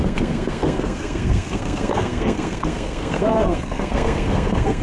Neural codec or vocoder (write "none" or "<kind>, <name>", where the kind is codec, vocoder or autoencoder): codec, SNAC